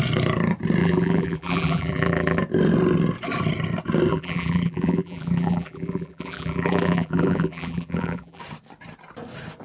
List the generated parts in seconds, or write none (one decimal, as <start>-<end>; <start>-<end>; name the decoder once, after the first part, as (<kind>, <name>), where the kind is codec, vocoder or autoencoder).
0.8-2.4 (vocoder, BigVGAN v2); 4.1-8.4

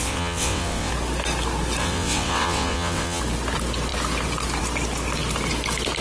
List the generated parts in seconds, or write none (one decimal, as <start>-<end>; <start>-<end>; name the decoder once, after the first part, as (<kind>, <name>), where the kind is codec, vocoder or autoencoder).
0.0-0.9 (vocoder, WaveNeXt); 1.8-3.2

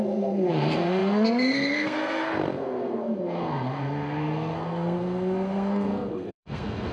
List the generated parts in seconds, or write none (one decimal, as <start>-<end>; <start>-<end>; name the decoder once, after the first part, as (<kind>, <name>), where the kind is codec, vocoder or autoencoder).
0.0-6.9 (codec, SNAC)